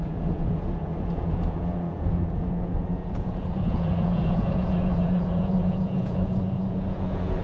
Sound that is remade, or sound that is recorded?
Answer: remade